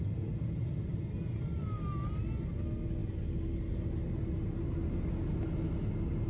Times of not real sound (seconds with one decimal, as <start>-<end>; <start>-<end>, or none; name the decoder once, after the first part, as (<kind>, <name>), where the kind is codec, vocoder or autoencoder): none